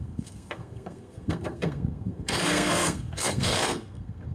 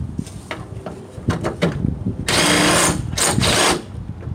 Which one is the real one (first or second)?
second